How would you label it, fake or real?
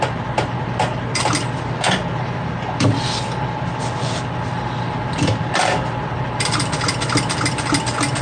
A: real